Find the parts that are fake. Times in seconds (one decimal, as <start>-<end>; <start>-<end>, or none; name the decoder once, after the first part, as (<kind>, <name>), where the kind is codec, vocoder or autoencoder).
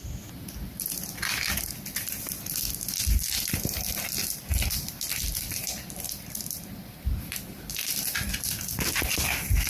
4.5-6.4 (vocoder, BigVGAN v2)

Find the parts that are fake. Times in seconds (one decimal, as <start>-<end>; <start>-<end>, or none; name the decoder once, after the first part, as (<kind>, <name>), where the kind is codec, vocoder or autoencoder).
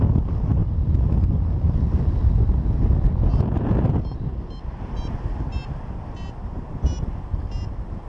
0.6-1.8 (vocoder, BigVGAN v2)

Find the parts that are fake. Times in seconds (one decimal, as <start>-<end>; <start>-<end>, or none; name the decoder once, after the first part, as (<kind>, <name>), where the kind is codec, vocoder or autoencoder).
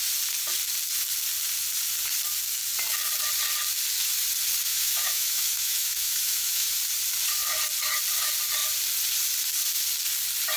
4.7-6.8 (autoencoder, DAC-VAE)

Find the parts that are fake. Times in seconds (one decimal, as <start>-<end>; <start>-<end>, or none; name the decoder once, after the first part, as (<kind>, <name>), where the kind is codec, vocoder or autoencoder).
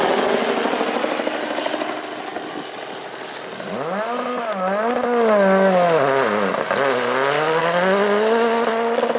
none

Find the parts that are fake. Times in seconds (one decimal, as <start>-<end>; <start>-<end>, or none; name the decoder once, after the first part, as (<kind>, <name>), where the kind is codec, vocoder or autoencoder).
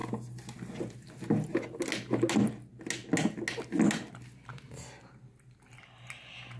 none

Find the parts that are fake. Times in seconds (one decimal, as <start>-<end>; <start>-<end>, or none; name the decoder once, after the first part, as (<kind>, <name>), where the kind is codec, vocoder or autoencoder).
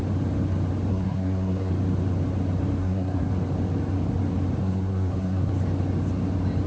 0.9-1.7 (codec, SNAC); 2.8-3.3; 4.6-5.5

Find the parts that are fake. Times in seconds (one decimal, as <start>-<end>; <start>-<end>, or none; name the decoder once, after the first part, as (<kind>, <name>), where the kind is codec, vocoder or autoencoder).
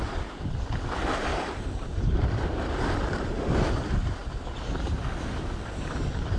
1.3-3.2 (vocoder, BigVGAN v2)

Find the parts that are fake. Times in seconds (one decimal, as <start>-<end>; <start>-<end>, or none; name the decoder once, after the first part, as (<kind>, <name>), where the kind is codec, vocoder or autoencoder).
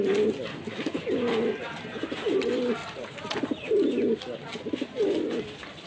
0.5-1.0 (autoencoder, DAC-VAE)